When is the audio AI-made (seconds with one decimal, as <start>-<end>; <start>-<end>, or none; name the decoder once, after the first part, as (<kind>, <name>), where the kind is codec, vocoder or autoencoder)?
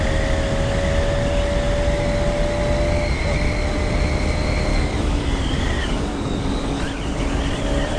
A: 4.7-6.8 (codec, DAC)